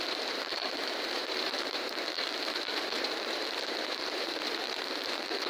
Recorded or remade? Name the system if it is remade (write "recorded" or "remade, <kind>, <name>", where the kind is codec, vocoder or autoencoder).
remade, vocoder, BigVGAN v2